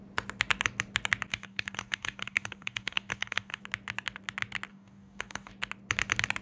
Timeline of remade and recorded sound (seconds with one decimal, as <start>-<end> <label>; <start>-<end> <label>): 0.0-1.3 recorded; 1.3-3.6 remade; 3.6-4.7 recorded; 4.7-5.5 remade; 5.5-6.4 recorded